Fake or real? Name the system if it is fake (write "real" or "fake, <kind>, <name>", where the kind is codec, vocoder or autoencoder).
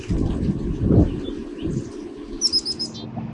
real